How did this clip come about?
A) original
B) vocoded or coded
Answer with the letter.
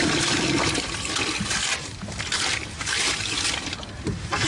A